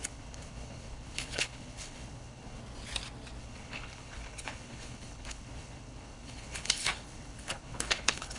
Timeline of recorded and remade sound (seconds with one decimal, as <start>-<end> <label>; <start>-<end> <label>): 0.0-2.6 remade; 2.6-3.4 recorded; 3.4-8.4 remade